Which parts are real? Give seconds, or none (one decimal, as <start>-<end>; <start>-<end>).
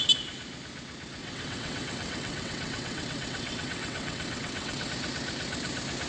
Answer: 0.0-1.2; 4.9-6.1